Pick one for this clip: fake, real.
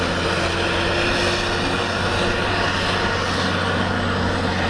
real